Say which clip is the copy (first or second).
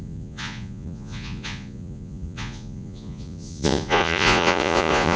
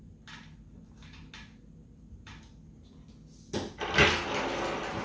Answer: first